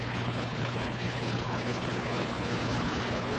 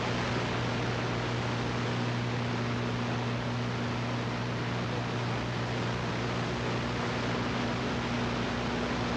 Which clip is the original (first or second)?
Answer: second